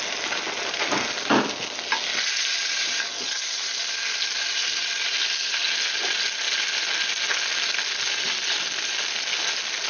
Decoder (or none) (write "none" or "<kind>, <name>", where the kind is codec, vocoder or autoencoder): none